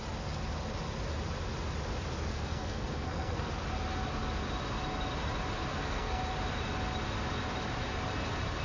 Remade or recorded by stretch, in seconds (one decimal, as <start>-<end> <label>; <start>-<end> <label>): 0.0-2.3 recorded; 2.3-3.5 remade; 3.5-5.7 recorded; 5.7-6.2 remade; 6.2-8.6 recorded